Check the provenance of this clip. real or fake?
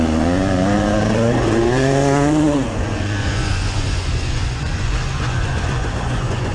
fake